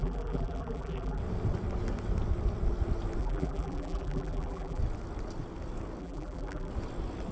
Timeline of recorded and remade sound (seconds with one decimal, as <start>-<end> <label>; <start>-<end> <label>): 0.0-1.2 remade; 1.2-3.2 recorded; 3.2-4.8 remade; 4.8-6.0 recorded; 6.0-6.7 remade; 6.7-7.3 recorded